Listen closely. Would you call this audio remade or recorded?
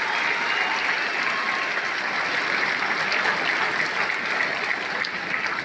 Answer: recorded